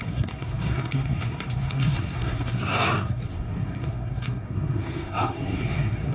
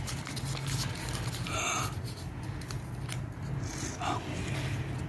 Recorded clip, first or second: second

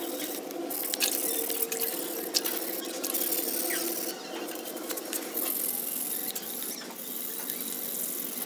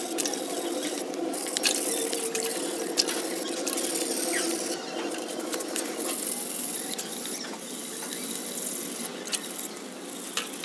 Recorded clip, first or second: first